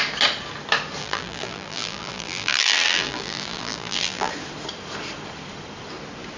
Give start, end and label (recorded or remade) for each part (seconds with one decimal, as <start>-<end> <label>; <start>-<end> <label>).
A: 0.0-1.0 recorded; 1.0-4.3 remade; 4.3-6.4 recorded